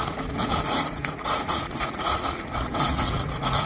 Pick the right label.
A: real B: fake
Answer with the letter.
B